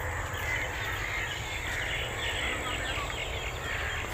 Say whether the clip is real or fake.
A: fake